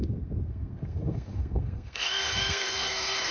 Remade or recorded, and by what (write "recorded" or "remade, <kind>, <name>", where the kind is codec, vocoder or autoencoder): remade, codec, SNAC